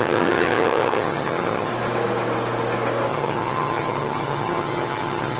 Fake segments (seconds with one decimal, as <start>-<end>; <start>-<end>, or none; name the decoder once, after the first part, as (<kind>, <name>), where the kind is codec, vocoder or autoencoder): 0.0-1.7 (vocoder, HiFi-GAN); 3.1-5.4